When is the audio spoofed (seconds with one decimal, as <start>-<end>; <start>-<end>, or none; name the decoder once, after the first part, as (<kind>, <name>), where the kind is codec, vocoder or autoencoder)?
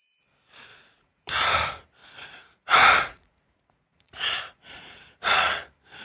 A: 0.7-1.3 (vocoder, Vocos); 2.0-5.5